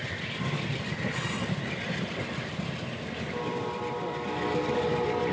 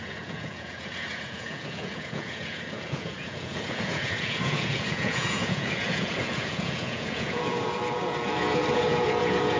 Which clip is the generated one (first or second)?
second